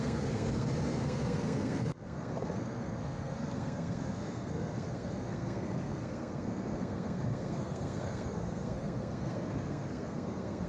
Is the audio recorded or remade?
remade